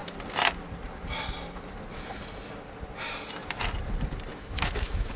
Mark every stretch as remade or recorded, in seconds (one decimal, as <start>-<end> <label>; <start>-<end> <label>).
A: 0.0-4.3 recorded; 4.3-5.2 remade